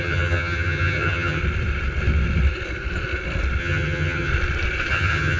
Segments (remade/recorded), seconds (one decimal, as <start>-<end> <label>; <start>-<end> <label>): 0.0-1.4 remade; 1.4-3.6 recorded; 3.6-4.3 remade; 4.3-4.9 recorded; 4.9-5.4 remade